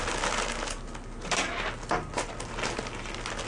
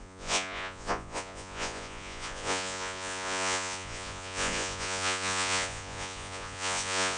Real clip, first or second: first